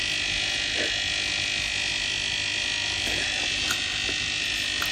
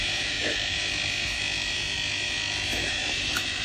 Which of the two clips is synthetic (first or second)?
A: second